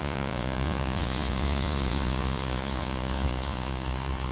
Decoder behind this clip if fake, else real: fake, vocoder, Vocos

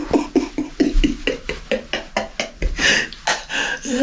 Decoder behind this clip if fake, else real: real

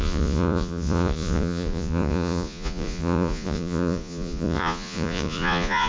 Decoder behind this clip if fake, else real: fake, vocoder, Vocos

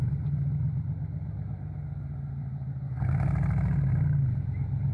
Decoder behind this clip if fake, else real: real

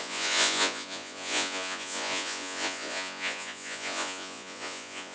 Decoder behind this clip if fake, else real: fake, vocoder, Vocos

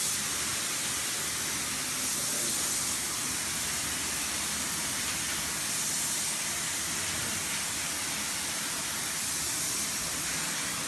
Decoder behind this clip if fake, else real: real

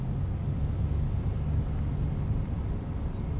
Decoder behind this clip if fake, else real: real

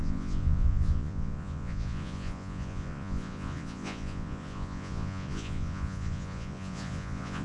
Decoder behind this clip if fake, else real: fake, vocoder, Vocos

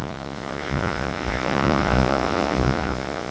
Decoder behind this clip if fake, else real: fake, vocoder, Vocos